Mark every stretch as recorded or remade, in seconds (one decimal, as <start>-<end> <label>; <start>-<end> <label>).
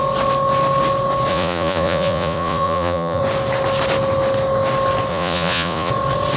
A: 0.0-1.3 recorded; 1.3-3.2 remade; 3.2-5.1 recorded; 5.1-5.9 remade; 5.9-6.4 recorded